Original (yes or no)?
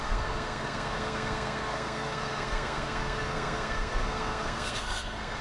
no